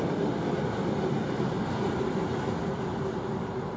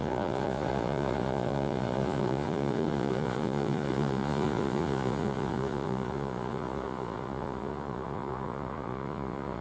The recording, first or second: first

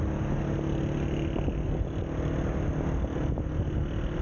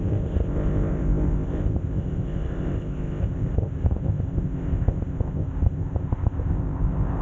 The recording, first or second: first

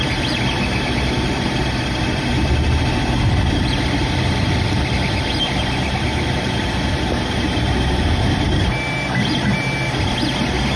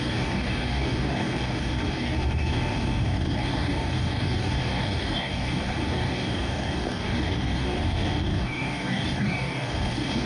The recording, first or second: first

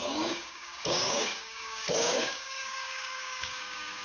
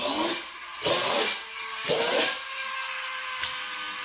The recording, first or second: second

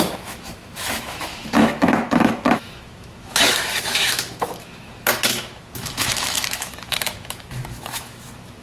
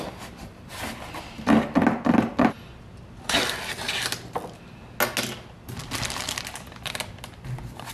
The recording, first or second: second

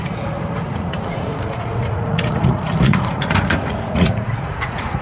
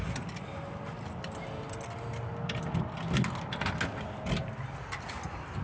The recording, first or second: second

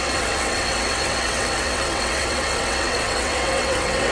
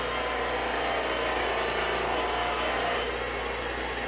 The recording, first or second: second